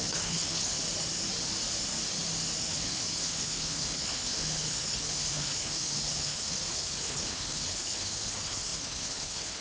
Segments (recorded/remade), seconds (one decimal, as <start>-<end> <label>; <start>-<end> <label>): 0.0-0.8 remade; 0.8-2.7 recorded; 2.7-9.6 remade